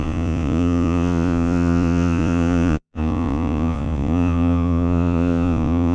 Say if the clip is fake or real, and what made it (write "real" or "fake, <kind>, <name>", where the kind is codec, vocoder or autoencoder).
fake, vocoder, Vocos